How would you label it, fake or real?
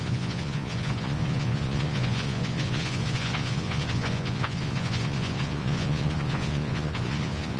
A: fake